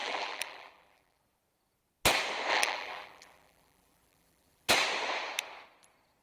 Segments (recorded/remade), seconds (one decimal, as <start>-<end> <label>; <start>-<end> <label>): 0.0-1.2 remade; 1.2-2.5 recorded; 2.5-4.7 remade; 4.7-6.2 recorded